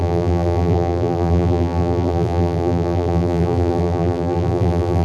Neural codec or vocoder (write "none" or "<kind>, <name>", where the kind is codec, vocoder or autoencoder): vocoder, BigVGAN v2